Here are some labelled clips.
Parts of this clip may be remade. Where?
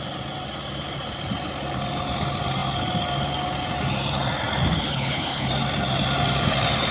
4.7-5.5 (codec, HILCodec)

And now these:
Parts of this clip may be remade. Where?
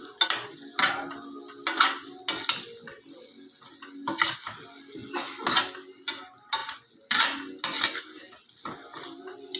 none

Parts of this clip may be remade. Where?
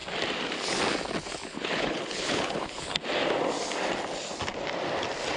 1.5-2.8 (codec, HILCodec)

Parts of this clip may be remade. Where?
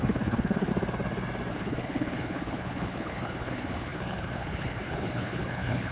0.0-0.7 (codec, HILCodec); 1.5-5.9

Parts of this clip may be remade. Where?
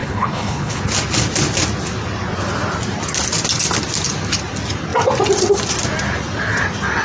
0.0-0.8 (codec, HILCodec)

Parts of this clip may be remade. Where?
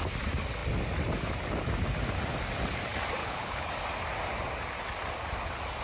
3.2-3.7 (codec, HILCodec)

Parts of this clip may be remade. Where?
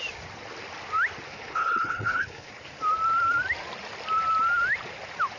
1.3-2.5 (codec, HILCodec)